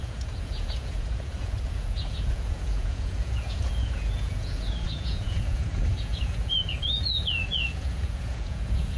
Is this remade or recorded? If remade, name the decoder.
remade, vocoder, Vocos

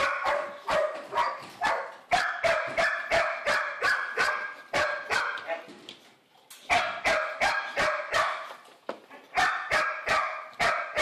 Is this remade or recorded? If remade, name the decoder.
recorded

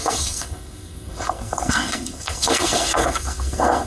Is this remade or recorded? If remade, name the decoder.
remade, codec, SNAC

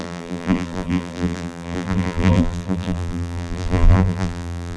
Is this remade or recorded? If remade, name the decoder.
remade, vocoder, BigVGAN v2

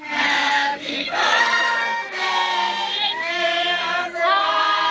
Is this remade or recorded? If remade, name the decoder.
remade, codec, SNAC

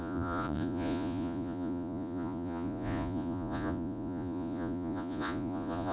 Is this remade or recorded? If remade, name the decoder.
remade, vocoder, Vocos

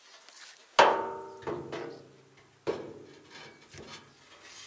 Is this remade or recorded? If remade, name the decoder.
recorded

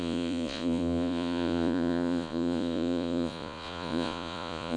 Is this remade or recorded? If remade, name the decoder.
remade, vocoder, Vocos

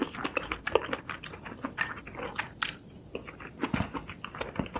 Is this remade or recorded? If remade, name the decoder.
recorded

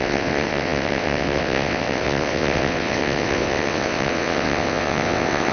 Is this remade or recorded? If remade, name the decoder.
remade, vocoder, WaveNeXt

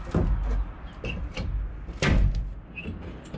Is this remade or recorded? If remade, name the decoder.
recorded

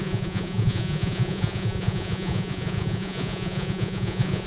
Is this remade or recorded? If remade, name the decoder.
remade, vocoder, Vocos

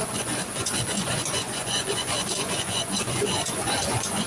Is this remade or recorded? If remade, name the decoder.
remade, vocoder, Vocos